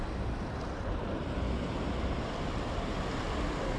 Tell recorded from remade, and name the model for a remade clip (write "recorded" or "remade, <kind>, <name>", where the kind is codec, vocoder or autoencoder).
recorded